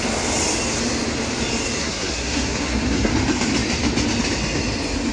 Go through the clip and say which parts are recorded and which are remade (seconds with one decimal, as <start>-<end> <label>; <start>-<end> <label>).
0.0-1.8 recorded; 1.8-3.1 remade; 3.1-5.1 recorded